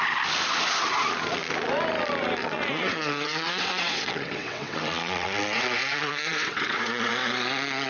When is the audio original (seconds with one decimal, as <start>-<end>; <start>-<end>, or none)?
0.0-2.4; 7.1-7.9